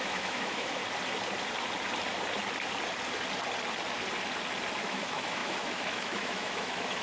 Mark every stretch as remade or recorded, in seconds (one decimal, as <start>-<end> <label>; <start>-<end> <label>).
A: 0.0-0.8 remade; 0.8-4.8 recorded; 4.8-7.0 remade